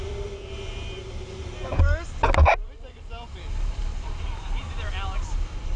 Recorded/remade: recorded